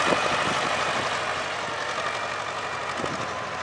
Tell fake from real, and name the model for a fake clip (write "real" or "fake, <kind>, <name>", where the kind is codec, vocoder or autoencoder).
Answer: real